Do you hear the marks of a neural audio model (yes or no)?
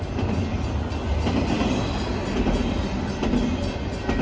no